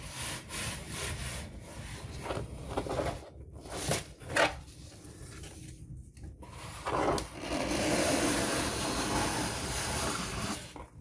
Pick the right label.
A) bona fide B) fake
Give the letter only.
A